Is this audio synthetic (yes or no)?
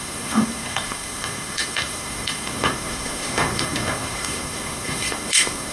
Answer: yes